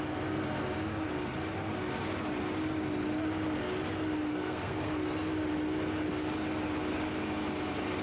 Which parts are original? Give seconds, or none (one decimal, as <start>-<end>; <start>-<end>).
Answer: 0.0-4.3; 5.0-8.0